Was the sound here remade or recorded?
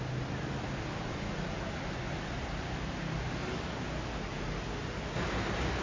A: recorded